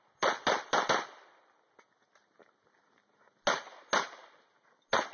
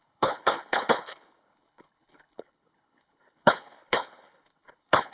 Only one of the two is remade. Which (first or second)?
second